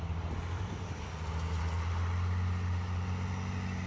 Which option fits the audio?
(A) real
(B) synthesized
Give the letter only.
A